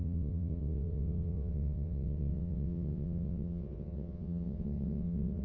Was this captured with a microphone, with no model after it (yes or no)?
no